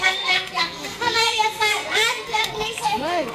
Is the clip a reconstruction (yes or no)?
yes